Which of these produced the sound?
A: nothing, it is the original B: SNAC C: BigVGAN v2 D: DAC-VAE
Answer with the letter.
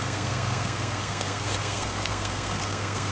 B